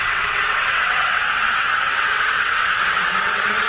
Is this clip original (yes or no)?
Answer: no